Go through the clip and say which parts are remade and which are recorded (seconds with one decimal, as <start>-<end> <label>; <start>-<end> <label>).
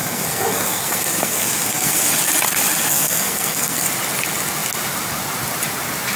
0.0-2.1 remade; 2.1-2.9 recorded; 2.9-3.9 remade; 3.9-6.2 recorded